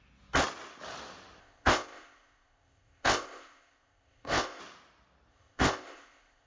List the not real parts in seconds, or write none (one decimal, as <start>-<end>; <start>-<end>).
1.4-4.6; 5.3-6.5